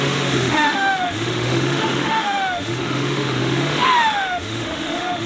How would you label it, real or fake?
fake